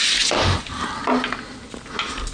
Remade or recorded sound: recorded